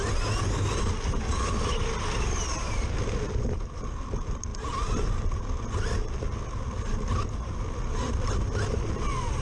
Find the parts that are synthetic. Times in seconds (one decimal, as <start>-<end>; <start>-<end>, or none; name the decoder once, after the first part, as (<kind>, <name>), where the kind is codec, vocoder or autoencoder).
none